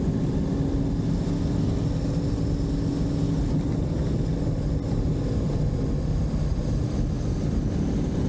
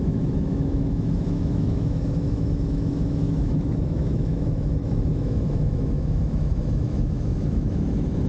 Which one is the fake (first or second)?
second